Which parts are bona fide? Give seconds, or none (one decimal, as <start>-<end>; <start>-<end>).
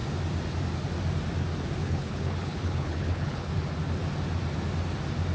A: 0.0-1.8; 3.5-5.3